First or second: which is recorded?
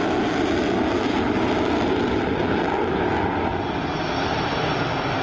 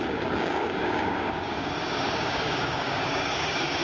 first